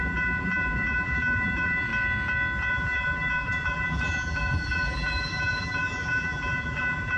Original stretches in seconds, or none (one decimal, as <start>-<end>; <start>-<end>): 1.9-2.7